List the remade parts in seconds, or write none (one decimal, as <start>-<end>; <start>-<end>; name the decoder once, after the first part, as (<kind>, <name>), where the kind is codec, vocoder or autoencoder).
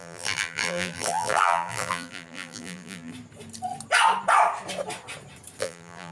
0.0-3.1 (vocoder, BigVGAN v2); 5.6-6.1